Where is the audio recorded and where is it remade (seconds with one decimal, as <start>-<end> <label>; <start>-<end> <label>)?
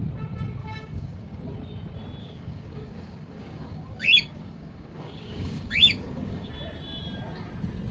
0.0-0.6 recorded; 0.6-1.4 remade; 1.4-2.2 recorded; 2.2-6.5 remade; 6.5-7.9 recorded